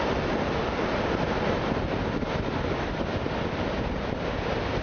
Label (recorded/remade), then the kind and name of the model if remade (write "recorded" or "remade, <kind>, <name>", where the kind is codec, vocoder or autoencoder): recorded